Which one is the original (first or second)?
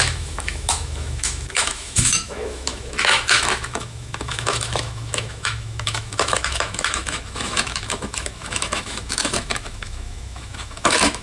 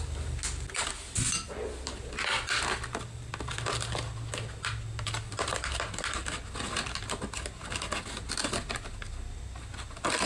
second